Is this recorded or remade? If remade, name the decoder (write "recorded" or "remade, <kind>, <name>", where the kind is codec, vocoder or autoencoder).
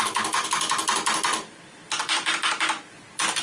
recorded